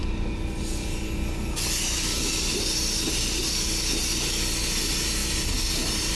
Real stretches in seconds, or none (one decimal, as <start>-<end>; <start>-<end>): 0.0-6.1